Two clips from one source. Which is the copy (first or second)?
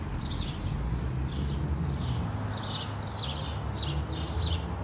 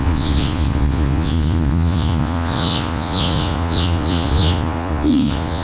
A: second